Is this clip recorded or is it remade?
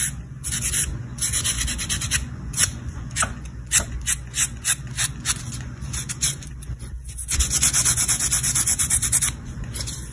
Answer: remade